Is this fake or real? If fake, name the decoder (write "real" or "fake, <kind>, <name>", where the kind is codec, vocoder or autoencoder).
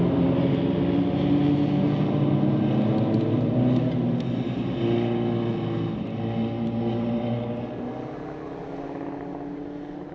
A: real